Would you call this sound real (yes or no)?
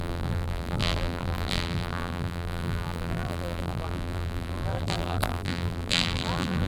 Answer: no